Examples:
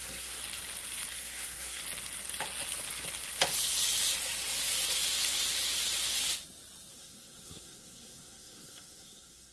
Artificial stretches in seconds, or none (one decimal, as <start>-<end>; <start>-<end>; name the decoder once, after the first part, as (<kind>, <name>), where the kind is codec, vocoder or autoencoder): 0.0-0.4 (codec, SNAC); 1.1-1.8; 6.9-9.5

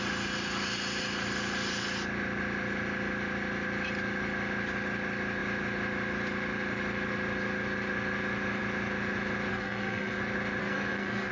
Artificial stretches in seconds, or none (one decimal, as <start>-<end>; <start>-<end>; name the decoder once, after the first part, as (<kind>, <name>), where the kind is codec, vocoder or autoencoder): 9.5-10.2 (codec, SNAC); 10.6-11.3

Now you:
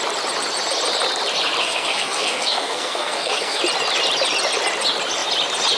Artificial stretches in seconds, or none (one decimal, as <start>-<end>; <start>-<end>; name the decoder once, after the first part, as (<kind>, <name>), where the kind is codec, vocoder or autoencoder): 1.6-3.6 (codec, SNAC)

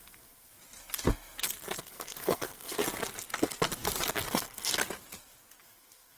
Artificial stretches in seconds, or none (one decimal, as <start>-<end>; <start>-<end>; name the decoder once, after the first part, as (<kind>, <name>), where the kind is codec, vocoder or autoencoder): 0.0-0.5 (codec, SNAC); 1.8-2.8; 4.3-4.7; 5.6-6.2

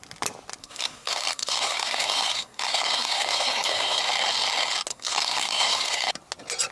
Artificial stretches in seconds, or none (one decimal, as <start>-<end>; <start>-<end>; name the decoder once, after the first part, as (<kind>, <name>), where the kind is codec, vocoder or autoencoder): 0.6-4.0 (codec, SNAC); 4.9-6.1

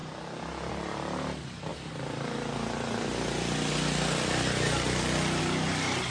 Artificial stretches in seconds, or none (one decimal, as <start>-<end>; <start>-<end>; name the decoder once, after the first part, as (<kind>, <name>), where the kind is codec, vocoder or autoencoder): none

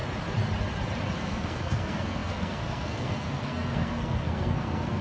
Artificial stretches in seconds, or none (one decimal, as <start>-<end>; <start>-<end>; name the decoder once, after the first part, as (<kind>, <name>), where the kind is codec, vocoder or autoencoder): 1.2-5.0 (codec, SNAC)

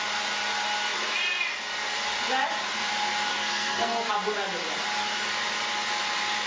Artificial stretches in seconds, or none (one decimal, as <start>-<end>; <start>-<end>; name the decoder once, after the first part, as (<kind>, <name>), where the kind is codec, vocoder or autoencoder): 3.3-4.1 (codec, SNAC)